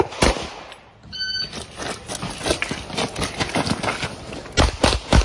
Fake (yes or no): no